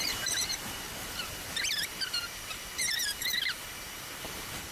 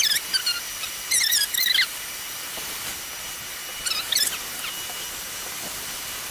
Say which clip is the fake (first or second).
first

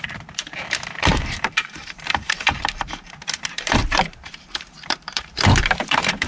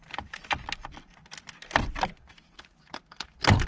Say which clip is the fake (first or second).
first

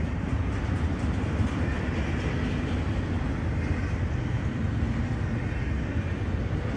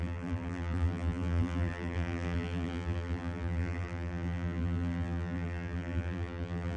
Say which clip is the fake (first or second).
second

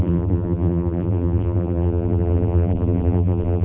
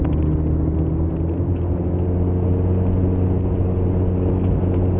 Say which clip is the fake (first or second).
first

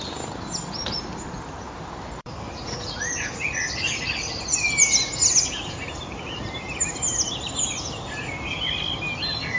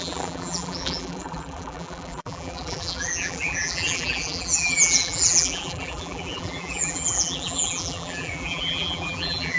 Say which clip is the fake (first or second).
second